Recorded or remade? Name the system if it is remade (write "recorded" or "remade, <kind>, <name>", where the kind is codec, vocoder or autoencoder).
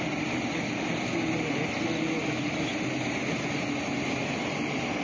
recorded